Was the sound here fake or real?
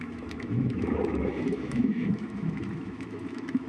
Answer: fake